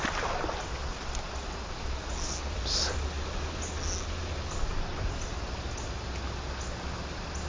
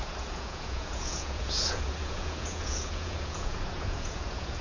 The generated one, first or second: second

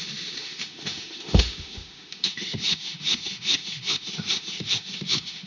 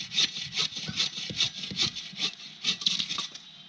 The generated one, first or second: first